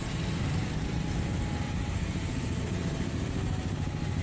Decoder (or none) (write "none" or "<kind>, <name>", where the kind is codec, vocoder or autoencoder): none